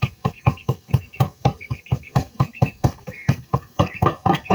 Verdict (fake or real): fake